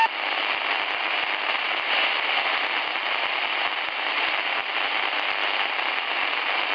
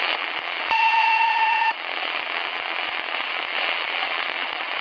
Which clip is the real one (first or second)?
first